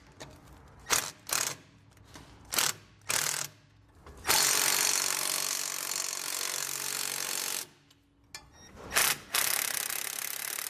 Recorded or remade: recorded